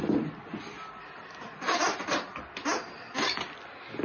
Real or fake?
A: real